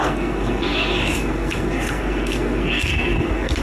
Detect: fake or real fake